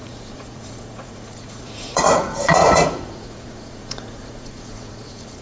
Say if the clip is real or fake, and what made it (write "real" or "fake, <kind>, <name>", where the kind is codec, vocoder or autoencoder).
fake, vocoder, Vocos